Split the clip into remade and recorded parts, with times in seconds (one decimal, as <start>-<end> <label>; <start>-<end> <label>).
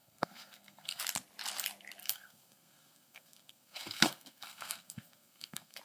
0.0-1.0 remade; 1.0-2.0 recorded; 2.0-5.8 remade